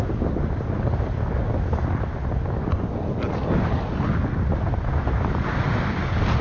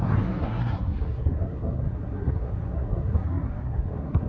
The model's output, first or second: second